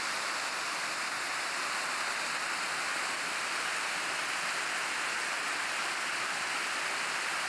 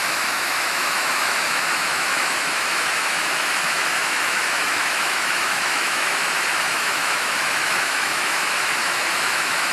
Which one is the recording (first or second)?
first